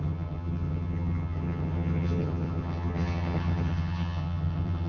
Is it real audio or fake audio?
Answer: fake